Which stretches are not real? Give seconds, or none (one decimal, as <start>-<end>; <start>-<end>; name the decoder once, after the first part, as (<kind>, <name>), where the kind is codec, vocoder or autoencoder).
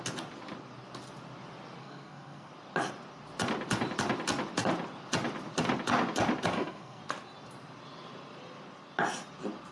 1.8-2.5 (codec, SNAC); 6.5-7.0